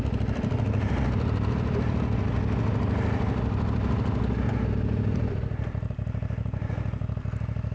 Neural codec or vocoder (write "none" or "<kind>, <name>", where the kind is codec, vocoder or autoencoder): none